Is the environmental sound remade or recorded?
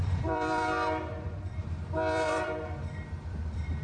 remade